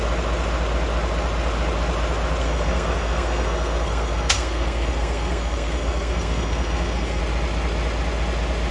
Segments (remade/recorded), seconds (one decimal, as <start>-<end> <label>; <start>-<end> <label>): 0.0-2.4 recorded; 2.4-7.2 remade; 7.2-8.7 recorded